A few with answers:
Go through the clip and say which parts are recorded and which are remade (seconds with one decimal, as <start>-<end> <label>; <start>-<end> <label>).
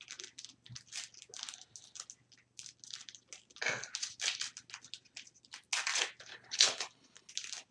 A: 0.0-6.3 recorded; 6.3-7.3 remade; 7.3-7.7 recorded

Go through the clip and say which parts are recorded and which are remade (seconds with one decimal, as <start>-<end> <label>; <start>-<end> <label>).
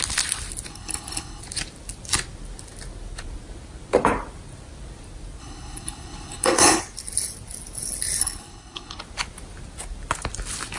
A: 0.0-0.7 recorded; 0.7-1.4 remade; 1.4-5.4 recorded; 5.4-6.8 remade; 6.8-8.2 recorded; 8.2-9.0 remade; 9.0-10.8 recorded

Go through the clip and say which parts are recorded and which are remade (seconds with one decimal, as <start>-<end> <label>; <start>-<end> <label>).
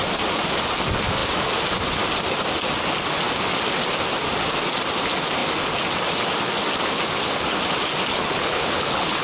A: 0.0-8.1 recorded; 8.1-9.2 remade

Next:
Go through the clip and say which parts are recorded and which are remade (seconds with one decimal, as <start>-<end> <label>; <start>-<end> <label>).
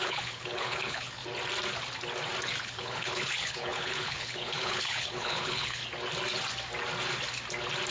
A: 0.0-1.2 remade; 1.2-2.6 recorded; 2.6-5.8 remade; 5.8-7.9 recorded